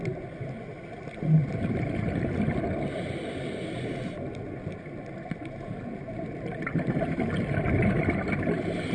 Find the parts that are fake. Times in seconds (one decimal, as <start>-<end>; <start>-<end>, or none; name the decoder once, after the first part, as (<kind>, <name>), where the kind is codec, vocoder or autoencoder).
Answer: none